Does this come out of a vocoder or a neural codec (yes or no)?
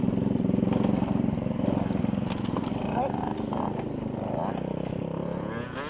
no